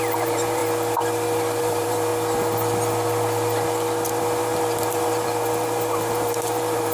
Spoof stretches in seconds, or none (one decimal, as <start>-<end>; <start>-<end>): 0.0-0.6; 1.6-2.1; 4.2-6.9